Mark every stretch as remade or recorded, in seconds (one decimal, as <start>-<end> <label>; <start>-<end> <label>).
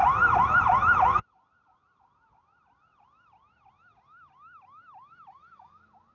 0.0-6.1 recorded